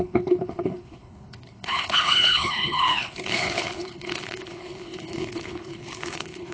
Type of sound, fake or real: fake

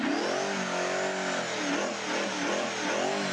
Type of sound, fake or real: real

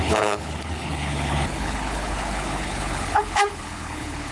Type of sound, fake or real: fake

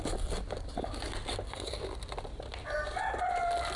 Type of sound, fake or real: real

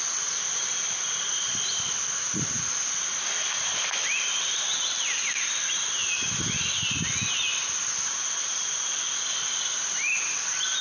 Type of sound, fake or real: real